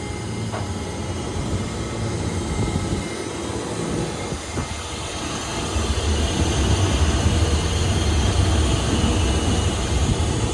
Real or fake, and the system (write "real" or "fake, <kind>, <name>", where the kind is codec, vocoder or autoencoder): real